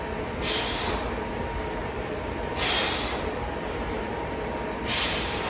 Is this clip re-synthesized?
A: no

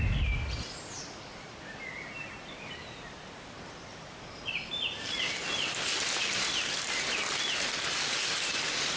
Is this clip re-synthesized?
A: no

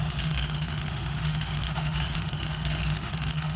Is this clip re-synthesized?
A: yes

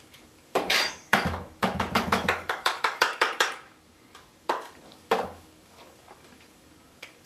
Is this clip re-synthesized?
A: yes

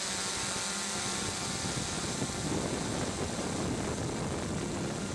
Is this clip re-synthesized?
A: no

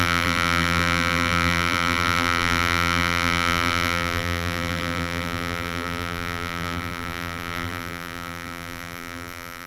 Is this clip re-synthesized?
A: yes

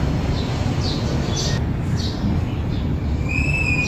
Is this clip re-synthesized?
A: no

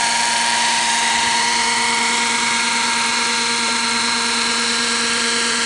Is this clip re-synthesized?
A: yes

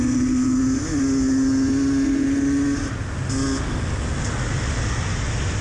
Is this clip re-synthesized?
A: no